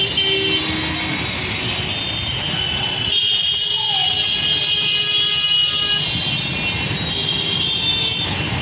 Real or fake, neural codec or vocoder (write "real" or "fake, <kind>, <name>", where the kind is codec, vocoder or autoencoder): real